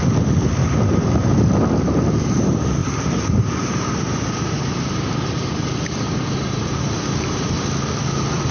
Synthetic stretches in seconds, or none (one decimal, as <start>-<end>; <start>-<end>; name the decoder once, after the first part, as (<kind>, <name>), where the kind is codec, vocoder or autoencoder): 0.6-1.5 (vocoder, BigVGAN v2); 2.8-7.5